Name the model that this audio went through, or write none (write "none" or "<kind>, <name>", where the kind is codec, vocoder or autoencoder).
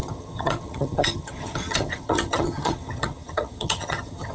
vocoder, HiFi-GAN